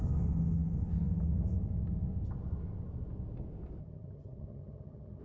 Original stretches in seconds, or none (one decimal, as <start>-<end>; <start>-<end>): 0.0-3.8